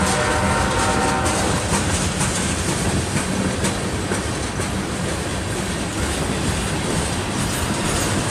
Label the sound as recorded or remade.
recorded